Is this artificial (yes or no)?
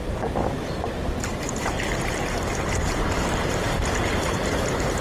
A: yes